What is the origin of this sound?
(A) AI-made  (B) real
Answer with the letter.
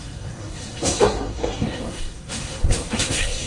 A